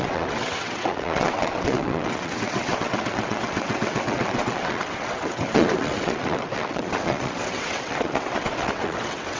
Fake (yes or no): yes